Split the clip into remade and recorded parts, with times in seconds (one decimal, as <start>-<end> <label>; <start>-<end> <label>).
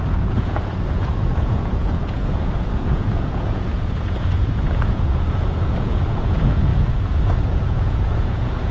0.0-8.7 remade